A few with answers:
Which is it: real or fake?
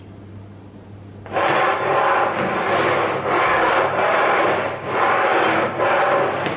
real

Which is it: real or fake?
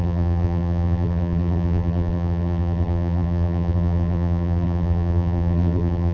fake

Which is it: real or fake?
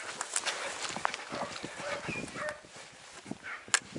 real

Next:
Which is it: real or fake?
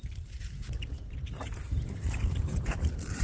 fake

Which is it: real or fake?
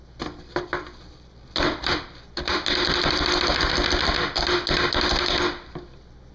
real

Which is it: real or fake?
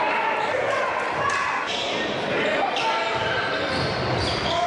real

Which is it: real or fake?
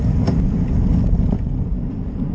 real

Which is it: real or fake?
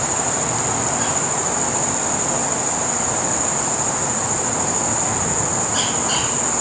real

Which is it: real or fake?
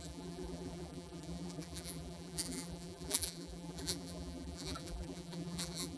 fake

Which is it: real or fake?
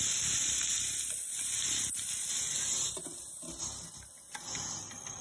real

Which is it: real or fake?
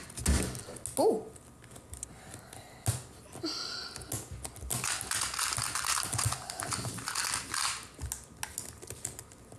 real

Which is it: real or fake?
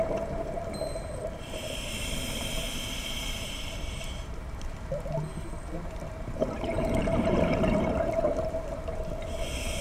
fake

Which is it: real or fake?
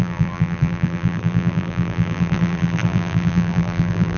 fake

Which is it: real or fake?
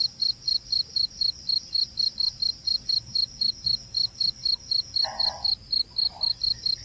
real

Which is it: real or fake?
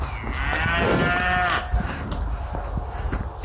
real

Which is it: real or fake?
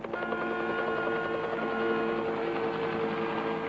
real